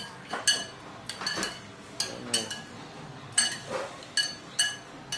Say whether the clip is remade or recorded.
recorded